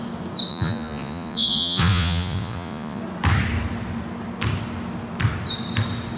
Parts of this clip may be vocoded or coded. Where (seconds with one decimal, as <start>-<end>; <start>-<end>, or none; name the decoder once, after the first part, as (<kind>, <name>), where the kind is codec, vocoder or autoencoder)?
0.5-3.0 (vocoder, Vocos)